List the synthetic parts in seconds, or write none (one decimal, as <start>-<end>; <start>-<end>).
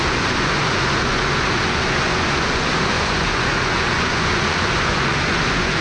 0.0-5.8